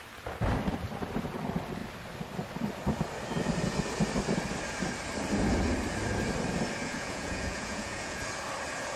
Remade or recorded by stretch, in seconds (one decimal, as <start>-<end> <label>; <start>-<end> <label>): 0.0-6.8 recorded; 6.8-8.2 remade; 8.2-9.0 recorded